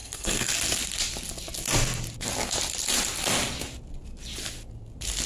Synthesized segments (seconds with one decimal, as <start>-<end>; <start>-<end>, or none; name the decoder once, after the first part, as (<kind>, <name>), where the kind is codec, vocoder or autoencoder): 0.0-0.5 (codec, SNAC)